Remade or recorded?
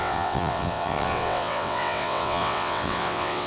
remade